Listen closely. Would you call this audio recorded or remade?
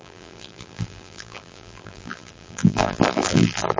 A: remade